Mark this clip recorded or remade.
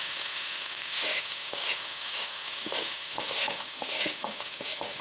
remade